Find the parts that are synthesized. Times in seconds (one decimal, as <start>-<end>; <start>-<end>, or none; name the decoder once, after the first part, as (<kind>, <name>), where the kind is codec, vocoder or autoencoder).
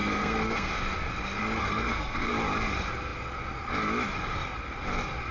0.0-0.7 (codec, SNAC); 1.6-2.3